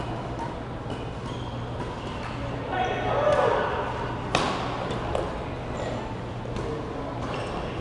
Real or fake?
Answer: real